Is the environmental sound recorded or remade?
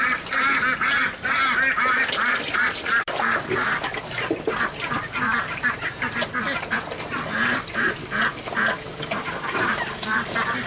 recorded